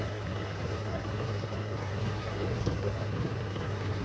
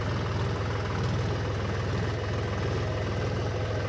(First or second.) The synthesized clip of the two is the first